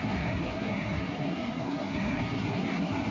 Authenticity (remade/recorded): remade